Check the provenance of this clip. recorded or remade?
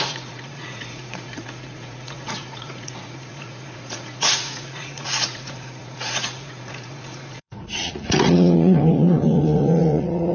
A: remade